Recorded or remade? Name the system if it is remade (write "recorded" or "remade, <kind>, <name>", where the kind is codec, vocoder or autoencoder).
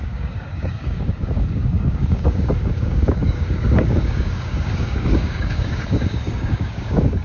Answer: remade, codec, DAC